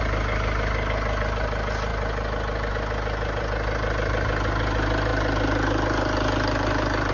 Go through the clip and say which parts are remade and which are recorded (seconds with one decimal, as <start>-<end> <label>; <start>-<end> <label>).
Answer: 0.0-1.9 recorded; 1.9-2.7 remade; 2.7-7.1 recorded